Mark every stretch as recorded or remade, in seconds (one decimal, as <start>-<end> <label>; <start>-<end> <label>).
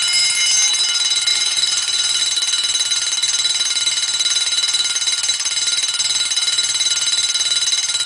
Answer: 0.0-1.3 recorded; 1.3-2.2 remade; 2.2-8.1 recorded